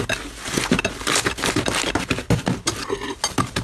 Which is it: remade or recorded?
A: recorded